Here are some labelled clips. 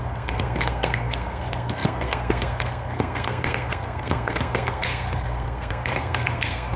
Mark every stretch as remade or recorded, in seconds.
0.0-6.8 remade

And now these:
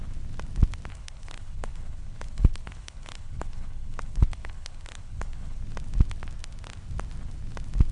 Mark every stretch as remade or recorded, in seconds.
0.0-0.9 recorded; 0.9-5.6 remade; 5.6-7.9 recorded

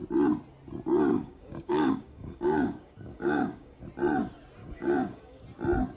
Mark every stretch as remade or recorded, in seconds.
0.0-1.1 recorded; 1.1-3.8 remade; 3.8-4.6 recorded; 4.6-5.4 remade; 5.4-6.0 recorded

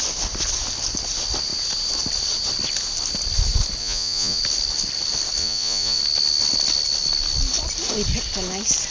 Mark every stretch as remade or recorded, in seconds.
0.0-3.8 recorded; 3.8-4.4 remade; 4.4-5.4 recorded; 5.4-6.0 remade; 6.0-8.9 recorded

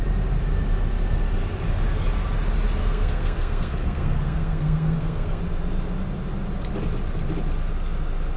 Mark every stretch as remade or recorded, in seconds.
0.0-2.8 recorded; 2.8-5.4 remade; 5.4-8.4 recorded

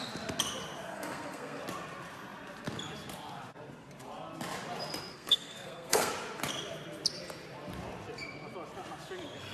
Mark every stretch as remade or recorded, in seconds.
0.0-0.9 recorded; 0.9-1.6 remade; 1.6-5.1 recorded; 5.1-6.1 remade; 6.1-9.5 recorded

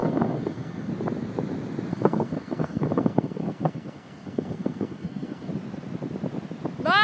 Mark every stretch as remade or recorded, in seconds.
0.0-0.9 remade; 0.9-1.9 recorded; 1.9-5.5 remade; 5.5-7.0 recorded